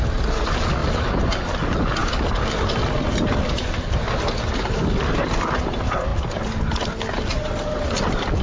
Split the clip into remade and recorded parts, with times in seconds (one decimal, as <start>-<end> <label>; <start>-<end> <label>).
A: 0.0-8.4 recorded